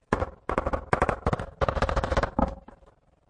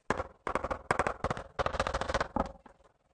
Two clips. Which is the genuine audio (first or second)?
second